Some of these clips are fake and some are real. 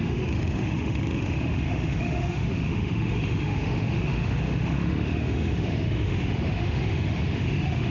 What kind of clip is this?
fake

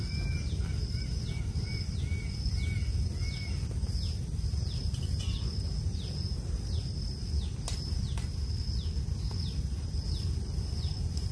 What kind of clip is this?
real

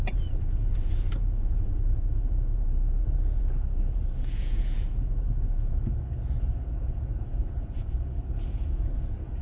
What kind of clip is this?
fake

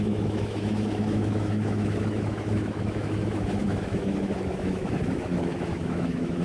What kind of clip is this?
fake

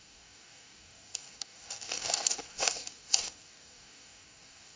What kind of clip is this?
fake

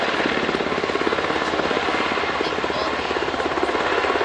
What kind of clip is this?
real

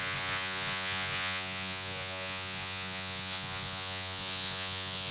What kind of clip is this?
fake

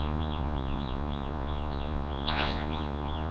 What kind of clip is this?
fake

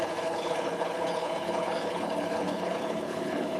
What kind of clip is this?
fake